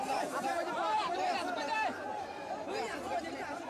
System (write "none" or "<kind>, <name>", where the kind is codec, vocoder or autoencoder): vocoder, BigVGAN v2